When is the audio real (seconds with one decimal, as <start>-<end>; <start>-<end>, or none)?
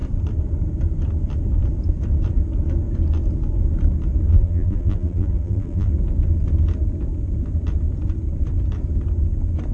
0.0-4.3; 5.9-9.7